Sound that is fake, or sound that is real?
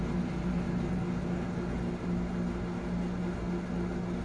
real